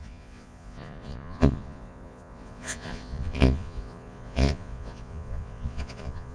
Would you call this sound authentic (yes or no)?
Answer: no